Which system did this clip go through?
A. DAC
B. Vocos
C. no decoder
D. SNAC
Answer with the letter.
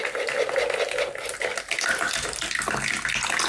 C